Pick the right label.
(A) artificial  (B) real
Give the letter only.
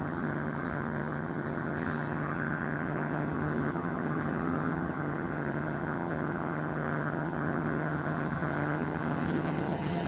A